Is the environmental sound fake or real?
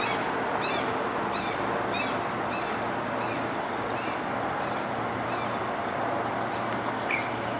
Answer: real